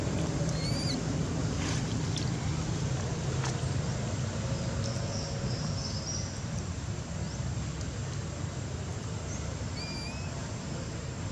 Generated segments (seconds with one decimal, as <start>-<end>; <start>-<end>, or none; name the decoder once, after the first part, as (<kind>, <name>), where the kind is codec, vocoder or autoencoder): none